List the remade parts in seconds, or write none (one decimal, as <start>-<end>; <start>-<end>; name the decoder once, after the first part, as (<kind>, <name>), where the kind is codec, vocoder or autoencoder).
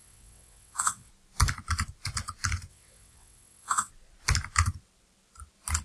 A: 0.0-1.1 (vocoder, WaveNeXt); 2.7-3.9